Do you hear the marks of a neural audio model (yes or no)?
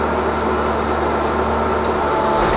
no